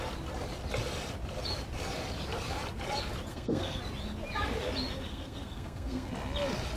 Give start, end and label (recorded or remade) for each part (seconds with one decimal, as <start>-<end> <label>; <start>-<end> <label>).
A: 0.0-3.3 recorded; 3.3-3.8 remade; 3.8-5.1 recorded; 5.1-6.1 remade; 6.1-6.8 recorded